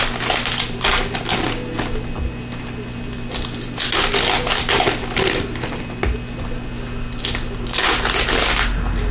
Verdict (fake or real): real